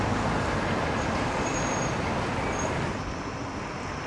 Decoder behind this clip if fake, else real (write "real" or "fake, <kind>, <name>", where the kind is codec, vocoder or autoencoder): real